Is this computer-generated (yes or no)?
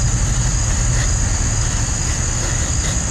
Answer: no